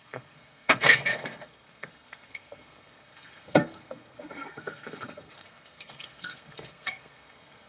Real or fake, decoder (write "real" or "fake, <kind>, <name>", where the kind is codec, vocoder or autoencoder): fake, codec, SNAC